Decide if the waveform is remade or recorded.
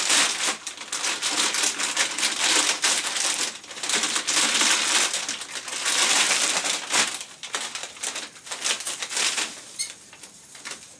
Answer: recorded